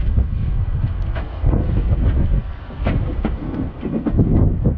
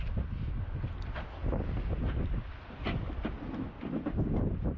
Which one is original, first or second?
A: second